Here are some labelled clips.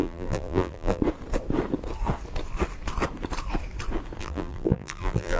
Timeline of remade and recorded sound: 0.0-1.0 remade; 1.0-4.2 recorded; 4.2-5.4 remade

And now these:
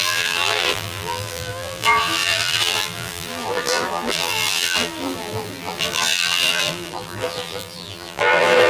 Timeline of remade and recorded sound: 0.0-8.7 remade